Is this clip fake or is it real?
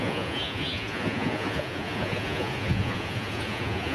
fake